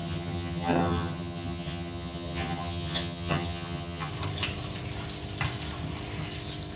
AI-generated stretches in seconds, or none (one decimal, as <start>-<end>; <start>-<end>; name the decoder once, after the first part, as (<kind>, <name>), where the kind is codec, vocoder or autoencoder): 0.0-4.1 (vocoder, HiFi-GAN)